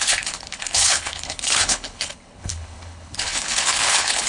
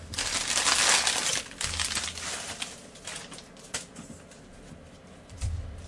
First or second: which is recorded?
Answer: second